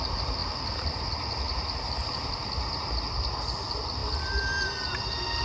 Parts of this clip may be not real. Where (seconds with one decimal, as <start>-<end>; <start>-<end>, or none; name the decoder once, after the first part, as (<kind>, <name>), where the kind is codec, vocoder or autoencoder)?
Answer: none